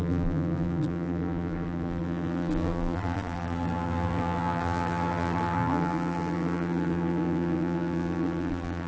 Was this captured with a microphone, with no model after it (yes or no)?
no